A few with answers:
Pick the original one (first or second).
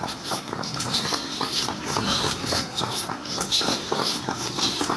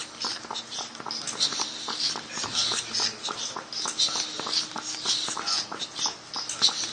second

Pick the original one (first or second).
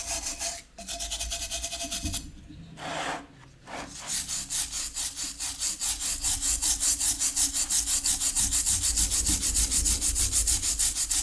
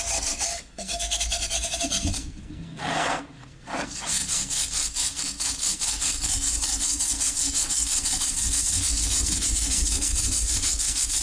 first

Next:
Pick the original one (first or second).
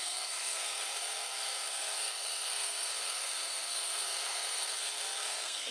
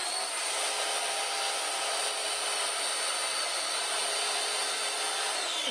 second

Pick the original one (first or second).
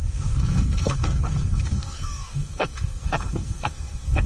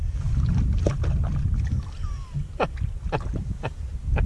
second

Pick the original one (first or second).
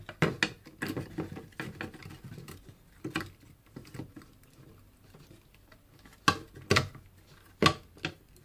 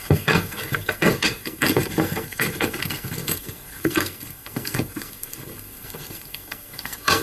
first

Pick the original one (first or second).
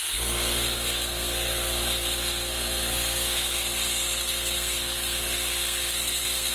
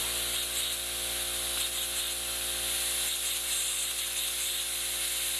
second